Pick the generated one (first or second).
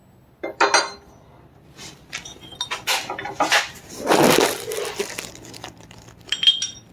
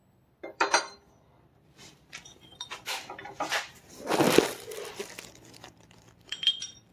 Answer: second